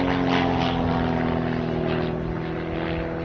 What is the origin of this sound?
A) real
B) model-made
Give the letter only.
A